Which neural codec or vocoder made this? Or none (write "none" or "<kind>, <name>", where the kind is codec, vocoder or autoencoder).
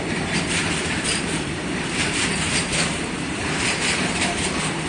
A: vocoder, BigVGAN v2